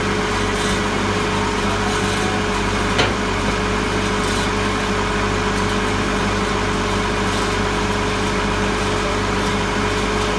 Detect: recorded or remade recorded